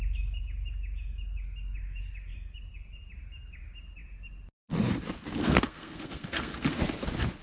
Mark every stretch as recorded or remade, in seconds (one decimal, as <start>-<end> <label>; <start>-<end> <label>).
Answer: 0.0-5.4 recorded; 5.4-6.8 remade; 6.8-7.4 recorded

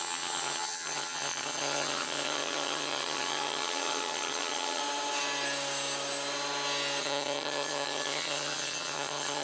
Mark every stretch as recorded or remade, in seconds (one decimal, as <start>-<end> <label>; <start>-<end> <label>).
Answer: 0.0-4.8 remade; 4.8-7.0 recorded; 7.0-9.4 remade

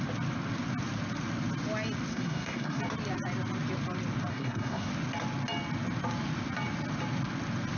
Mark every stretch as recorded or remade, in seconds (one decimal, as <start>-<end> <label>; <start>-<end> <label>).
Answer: 0.0-2.1 recorded; 2.1-2.8 remade; 2.8-4.3 recorded; 4.3-4.9 remade; 4.9-7.8 recorded

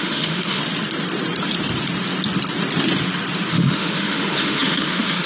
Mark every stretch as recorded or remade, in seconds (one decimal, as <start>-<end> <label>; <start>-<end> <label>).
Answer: 0.0-0.6 remade; 0.6-3.5 recorded; 3.5-5.3 remade

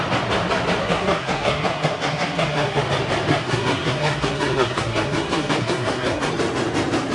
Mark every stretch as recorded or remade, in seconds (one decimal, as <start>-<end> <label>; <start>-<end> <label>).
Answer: 0.0-0.8 recorded; 0.8-2.8 remade; 2.8-3.3 recorded; 3.3-6.3 remade; 6.3-7.1 recorded

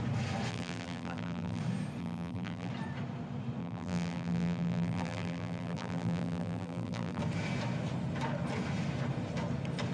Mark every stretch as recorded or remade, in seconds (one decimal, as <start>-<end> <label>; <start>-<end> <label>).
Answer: 0.0-0.5 recorded; 0.5-1.6 remade; 1.6-2.0 recorded; 2.0-2.7 remade; 2.7-3.6 recorded; 3.6-7.2 remade; 7.2-9.9 recorded

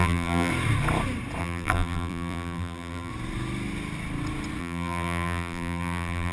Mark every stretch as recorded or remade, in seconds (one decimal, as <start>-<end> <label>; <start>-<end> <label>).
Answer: 0.0-0.5 remade; 0.5-1.4 recorded; 1.4-3.1 remade; 3.1-4.6 recorded; 4.6-6.3 remade

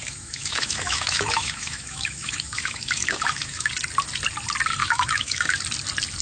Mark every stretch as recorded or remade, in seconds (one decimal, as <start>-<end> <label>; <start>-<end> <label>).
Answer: 0.0-3.7 remade; 3.7-4.8 recorded; 4.8-5.6 remade; 5.6-6.2 recorded